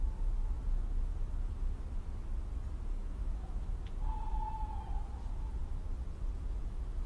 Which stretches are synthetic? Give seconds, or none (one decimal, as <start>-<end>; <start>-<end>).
3.0-3.7